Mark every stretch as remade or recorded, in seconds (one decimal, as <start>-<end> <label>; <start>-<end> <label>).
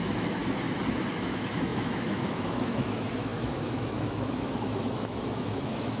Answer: 0.0-0.4 remade; 0.4-1.1 recorded; 1.1-6.0 remade